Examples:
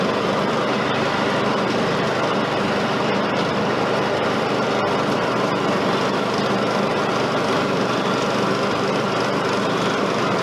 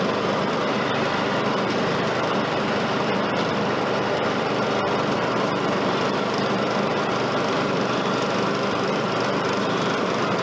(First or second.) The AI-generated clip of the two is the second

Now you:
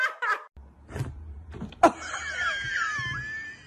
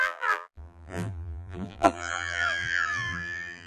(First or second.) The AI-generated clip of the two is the second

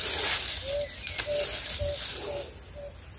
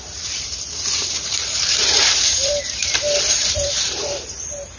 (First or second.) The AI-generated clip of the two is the second